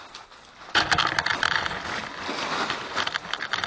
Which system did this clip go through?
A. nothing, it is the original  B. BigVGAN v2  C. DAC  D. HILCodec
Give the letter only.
A